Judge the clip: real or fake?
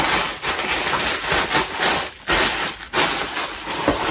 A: real